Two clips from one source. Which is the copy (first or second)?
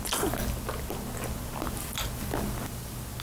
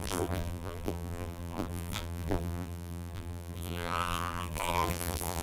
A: second